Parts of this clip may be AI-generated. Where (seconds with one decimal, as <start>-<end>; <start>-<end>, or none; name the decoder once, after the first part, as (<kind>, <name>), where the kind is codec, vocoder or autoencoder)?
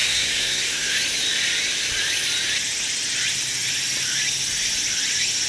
0.0-0.9 (codec, SNAC)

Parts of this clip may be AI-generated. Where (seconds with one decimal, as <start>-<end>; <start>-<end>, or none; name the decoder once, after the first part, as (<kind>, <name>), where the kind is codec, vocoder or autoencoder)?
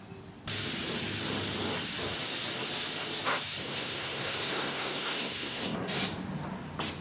3.6-6.0 (codec, SNAC)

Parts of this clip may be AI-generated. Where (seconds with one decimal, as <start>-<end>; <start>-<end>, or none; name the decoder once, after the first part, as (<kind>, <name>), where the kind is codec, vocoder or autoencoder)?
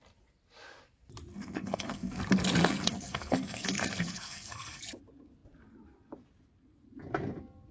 1.3-2.2 (codec, SNAC); 2.6-4.8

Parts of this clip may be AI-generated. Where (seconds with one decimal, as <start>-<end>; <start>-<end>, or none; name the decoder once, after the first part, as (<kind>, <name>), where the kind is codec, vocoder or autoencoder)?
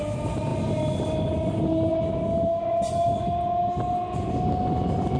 none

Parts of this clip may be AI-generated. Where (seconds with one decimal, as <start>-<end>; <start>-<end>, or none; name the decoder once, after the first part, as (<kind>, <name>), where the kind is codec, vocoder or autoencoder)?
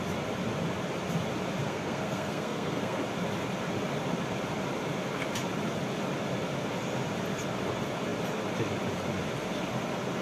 1.6-3.0 (codec, SNAC)